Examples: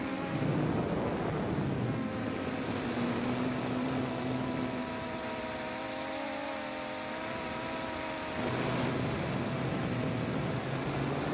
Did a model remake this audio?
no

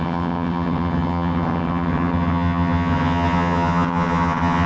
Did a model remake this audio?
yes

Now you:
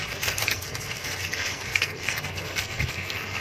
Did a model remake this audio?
yes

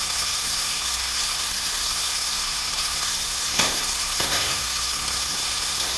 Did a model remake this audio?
yes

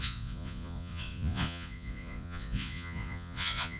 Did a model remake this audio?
yes